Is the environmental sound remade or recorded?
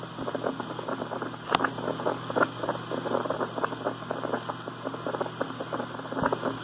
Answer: recorded